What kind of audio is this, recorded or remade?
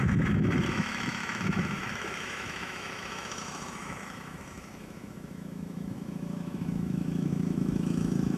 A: remade